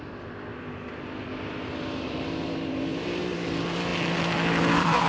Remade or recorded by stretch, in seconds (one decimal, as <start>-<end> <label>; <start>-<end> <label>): 0.0-5.1 recorded